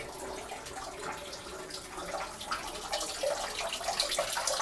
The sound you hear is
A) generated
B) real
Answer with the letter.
B